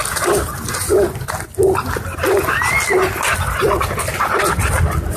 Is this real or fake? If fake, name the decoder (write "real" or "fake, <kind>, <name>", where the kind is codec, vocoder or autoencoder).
real